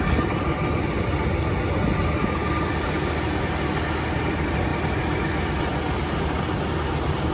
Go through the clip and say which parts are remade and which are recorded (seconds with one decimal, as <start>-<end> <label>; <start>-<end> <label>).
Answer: 0.0-7.3 recorded